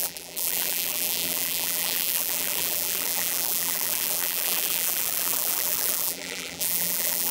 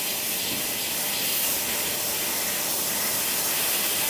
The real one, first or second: second